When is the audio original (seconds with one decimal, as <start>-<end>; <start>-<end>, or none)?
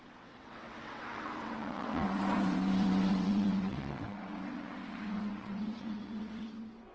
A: none